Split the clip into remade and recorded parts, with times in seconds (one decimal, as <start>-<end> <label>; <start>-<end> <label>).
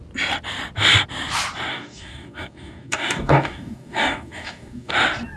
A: 0.0-1.7 recorded; 1.7-4.9 remade; 4.9-5.4 recorded